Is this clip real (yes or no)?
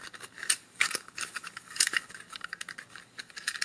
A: no